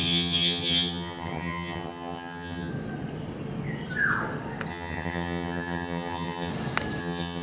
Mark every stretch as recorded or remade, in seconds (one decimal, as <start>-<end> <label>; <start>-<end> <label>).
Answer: 0.0-2.7 remade; 2.7-4.7 recorded; 4.7-6.5 remade; 6.5-7.0 recorded; 7.0-7.4 remade